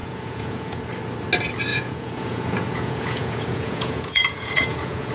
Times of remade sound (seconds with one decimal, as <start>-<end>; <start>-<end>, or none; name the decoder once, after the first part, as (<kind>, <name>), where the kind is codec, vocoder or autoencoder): 0.0-0.8 (vocoder, Vocos); 1.7-5.1